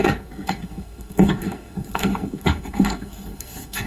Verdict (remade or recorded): remade